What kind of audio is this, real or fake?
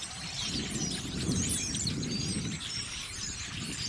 fake